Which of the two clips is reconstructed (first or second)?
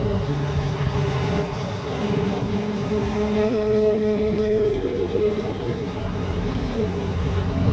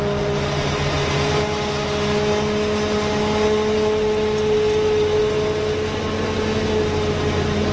first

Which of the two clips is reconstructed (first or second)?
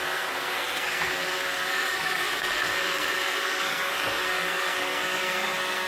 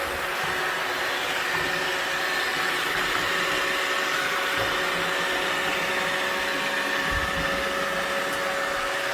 first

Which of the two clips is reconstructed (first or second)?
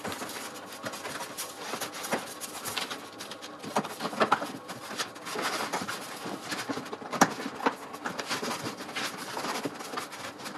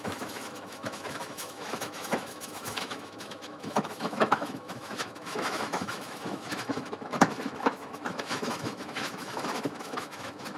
second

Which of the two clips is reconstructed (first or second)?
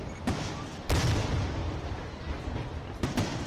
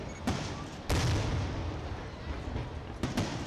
first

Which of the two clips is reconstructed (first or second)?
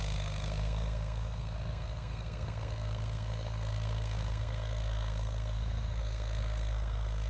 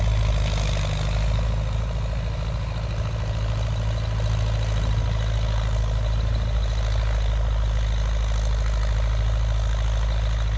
first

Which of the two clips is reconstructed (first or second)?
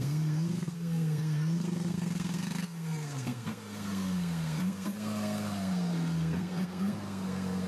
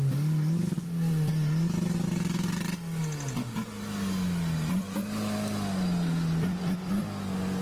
first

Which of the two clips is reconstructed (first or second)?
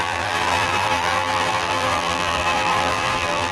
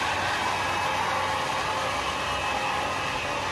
first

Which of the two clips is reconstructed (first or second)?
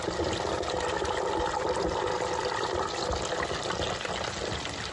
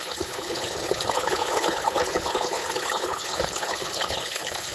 second